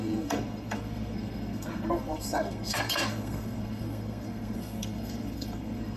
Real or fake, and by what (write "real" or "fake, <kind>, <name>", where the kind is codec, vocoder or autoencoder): fake, codec, SNAC